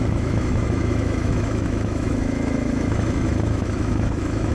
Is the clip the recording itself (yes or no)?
no